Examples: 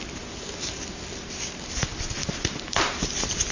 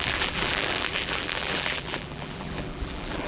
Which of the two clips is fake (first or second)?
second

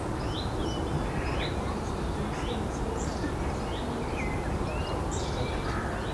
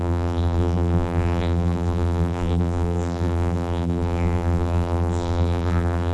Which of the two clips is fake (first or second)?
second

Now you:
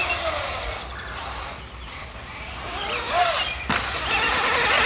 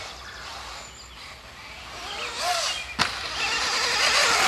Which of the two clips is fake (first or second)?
first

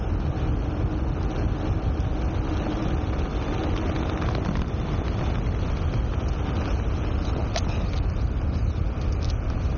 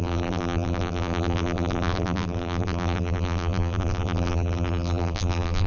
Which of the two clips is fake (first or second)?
second